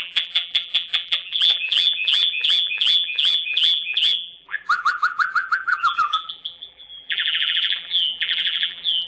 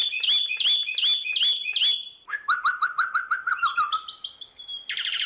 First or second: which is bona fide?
second